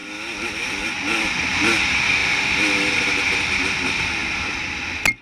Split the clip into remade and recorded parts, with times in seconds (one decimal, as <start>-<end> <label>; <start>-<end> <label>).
0.0-2.2 recorded; 2.2-3.4 remade; 3.4-5.2 recorded